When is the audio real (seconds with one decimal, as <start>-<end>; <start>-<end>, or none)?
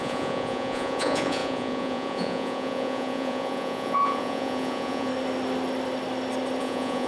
5.1-6.6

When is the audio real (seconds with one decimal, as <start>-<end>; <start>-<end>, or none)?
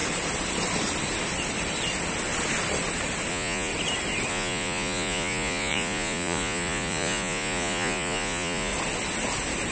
0.0-3.3; 3.7-4.3; 8.7-9.7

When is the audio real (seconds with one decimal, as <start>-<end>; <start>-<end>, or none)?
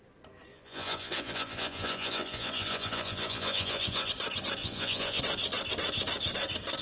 0.0-0.5; 4.1-4.6; 5.2-6.8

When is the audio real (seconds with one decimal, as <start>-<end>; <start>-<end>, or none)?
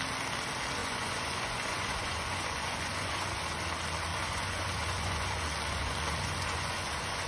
0.0-0.8; 3.4-4.1